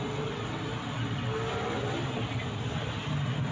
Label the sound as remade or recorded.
recorded